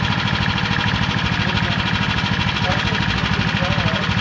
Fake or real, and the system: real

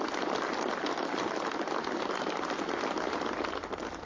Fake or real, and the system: real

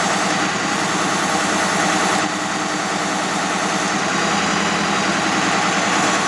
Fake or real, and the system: real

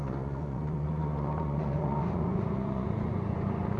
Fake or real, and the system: fake, vocoder, Vocos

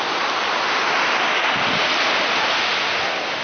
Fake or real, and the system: real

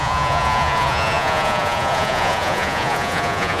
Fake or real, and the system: fake, vocoder, Vocos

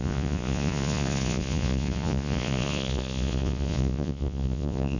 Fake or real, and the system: fake, vocoder, Vocos